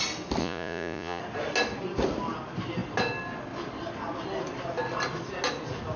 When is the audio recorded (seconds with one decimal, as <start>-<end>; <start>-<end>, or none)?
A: 0.0-0.4; 1.2-6.0